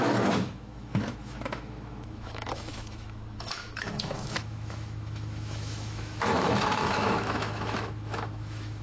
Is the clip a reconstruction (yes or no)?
yes